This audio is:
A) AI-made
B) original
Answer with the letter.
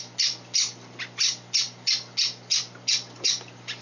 B